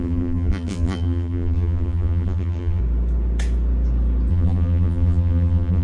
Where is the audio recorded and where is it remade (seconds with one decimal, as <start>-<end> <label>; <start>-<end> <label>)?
0.0-2.8 remade; 2.8-4.3 recorded; 4.3-5.8 remade